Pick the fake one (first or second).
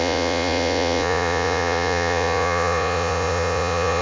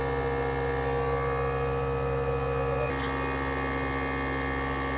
first